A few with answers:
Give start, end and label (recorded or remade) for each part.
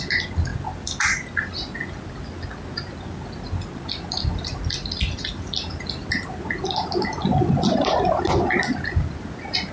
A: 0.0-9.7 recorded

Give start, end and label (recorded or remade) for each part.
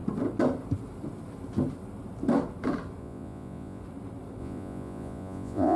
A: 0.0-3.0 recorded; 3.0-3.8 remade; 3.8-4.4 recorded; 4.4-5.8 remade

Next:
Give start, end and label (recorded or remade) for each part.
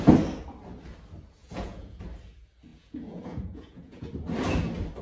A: 0.0-1.4 recorded; 1.4-2.0 remade; 2.0-2.7 recorded; 2.7-4.1 remade; 4.1-5.0 recorded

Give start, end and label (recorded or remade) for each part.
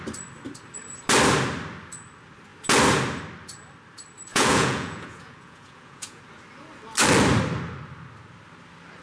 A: 0.0-4.3 recorded; 4.3-6.2 remade; 6.2-9.0 recorded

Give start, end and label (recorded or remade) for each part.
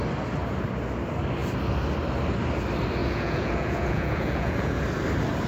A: 0.0-3.0 recorded; 3.0-4.8 remade; 4.8-5.5 recorded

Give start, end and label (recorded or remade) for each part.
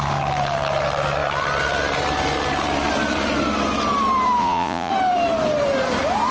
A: 0.0-4.4 recorded; 4.4-4.9 remade; 4.9-6.3 recorded